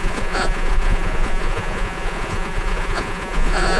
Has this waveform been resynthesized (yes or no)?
yes